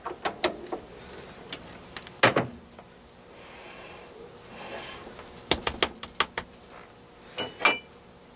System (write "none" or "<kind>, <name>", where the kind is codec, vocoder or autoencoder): none